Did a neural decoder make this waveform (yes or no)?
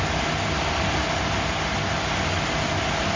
no